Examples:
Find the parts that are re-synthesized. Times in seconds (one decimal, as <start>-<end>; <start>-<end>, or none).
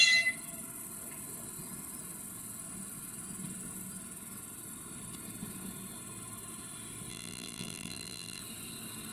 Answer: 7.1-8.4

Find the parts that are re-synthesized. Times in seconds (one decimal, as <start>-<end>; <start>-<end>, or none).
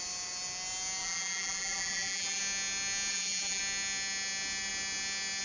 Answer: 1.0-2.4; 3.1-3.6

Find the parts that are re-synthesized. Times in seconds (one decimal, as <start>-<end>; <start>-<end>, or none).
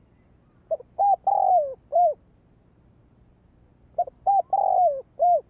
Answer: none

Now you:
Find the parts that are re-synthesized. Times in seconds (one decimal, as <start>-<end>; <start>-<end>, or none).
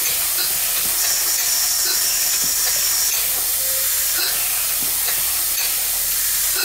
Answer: none